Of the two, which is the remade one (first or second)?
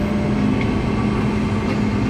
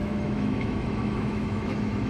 second